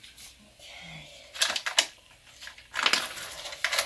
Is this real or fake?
real